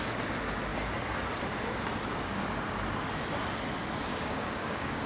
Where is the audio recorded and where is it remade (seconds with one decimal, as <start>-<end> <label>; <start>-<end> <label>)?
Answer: 0.0-4.1 recorded; 4.1-5.1 remade